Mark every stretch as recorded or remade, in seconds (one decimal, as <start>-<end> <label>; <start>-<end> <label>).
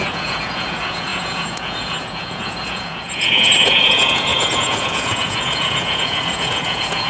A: 0.0-7.1 remade